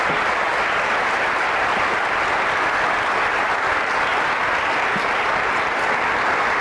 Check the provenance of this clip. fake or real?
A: real